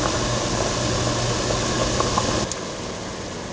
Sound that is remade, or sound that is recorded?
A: recorded